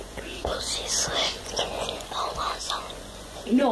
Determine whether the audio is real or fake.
fake